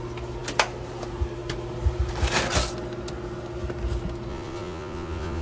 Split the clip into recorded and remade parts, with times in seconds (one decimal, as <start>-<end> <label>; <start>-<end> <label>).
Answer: 0.0-4.3 recorded; 4.3-5.4 remade